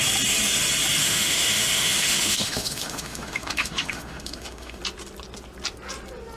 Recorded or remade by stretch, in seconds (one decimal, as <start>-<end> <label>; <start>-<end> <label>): 0.0-1.0 recorded; 1.0-4.8 remade; 4.8-6.4 recorded